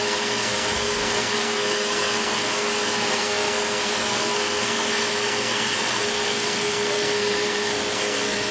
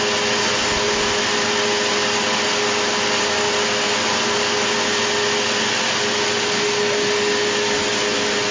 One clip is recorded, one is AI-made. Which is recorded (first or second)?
second